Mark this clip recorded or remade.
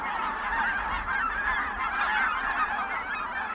recorded